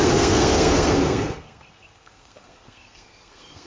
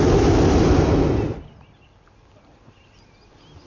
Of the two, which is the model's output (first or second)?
first